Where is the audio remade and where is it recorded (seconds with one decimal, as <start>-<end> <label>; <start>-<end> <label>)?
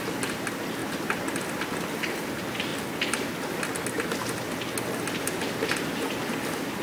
0.0-6.8 recorded